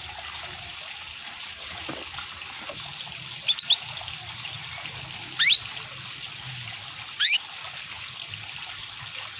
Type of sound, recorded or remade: recorded